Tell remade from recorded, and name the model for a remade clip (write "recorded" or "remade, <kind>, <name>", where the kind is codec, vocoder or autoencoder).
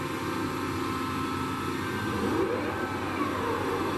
recorded